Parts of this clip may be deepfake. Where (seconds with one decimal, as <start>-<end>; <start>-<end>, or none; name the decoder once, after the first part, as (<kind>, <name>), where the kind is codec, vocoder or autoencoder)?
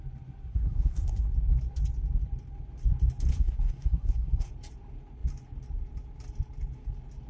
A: 0.5-1.2 (codec, SNAC); 3.3-4.5